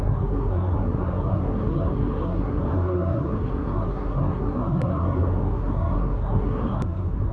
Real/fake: fake